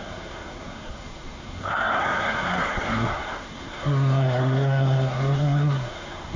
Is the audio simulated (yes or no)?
yes